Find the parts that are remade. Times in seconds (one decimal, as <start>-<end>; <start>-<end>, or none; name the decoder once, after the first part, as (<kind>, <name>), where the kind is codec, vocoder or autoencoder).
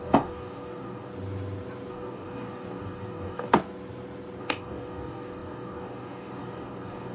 0.0-1.1 (codec, DAC); 1.9-3.5; 4.4-7.1